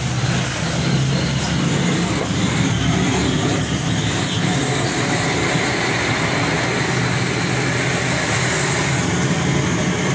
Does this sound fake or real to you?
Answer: real